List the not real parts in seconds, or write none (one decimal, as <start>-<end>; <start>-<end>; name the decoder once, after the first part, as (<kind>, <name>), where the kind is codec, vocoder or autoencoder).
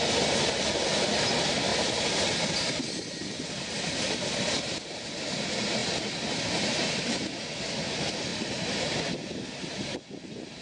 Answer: 1.7-3.3 (vocoder, BigVGAN v2); 8.3-9.1